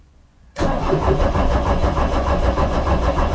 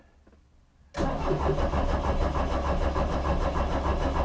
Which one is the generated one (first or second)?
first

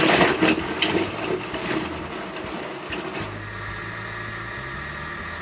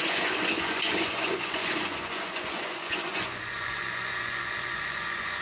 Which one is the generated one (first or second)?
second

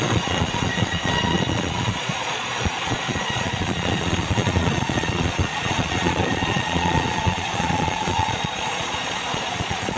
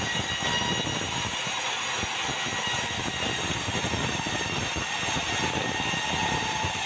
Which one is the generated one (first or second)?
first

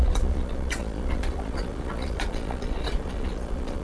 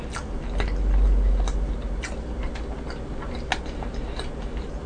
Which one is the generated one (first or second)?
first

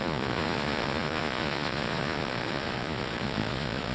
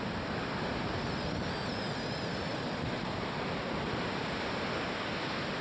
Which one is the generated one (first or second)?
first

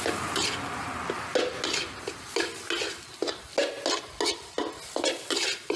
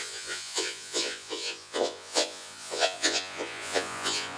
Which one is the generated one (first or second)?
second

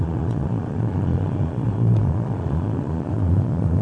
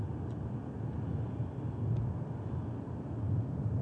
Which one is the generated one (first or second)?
first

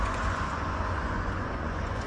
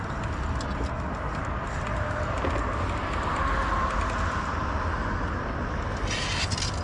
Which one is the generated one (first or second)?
first